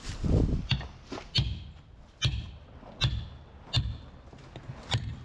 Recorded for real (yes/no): yes